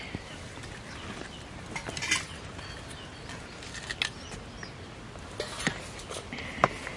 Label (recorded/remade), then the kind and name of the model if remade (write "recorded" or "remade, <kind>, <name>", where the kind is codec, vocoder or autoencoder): recorded